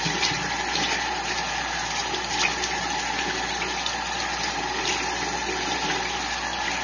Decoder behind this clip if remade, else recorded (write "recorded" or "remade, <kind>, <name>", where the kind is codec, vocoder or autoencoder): recorded